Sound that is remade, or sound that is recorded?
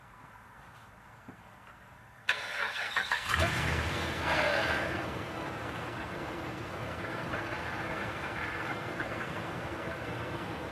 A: remade